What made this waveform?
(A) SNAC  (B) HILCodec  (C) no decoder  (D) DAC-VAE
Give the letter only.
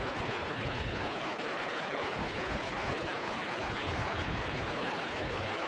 B